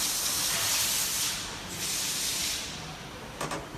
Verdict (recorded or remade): recorded